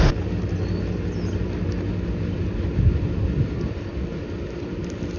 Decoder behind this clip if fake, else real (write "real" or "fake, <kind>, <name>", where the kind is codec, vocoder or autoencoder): real